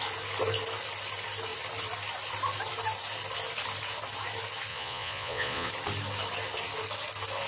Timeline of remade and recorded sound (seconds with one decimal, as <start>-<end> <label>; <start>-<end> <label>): 0.0-4.7 recorded; 4.7-5.7 remade; 5.7-7.5 recorded